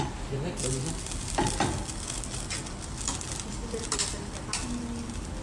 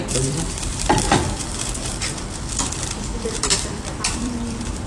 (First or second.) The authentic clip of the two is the first